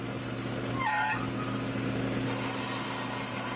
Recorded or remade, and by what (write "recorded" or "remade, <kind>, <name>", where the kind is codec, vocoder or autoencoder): recorded